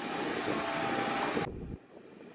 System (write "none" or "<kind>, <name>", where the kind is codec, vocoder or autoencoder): none